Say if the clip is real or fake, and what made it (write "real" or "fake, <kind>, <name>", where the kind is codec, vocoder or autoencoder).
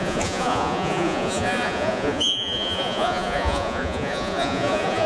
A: fake, vocoder, Vocos